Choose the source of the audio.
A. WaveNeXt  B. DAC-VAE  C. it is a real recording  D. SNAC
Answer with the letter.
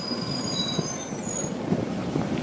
C